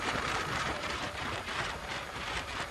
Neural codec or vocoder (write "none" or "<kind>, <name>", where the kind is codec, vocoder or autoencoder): vocoder, BigVGAN v2